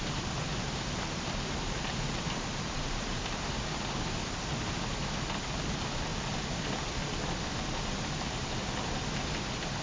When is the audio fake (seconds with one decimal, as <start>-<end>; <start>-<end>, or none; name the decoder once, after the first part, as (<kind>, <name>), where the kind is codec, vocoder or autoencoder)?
0.5-3.5 (vocoder, BigVGAN v2); 6.1-7.1